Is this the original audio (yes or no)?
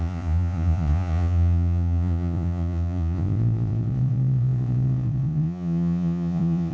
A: no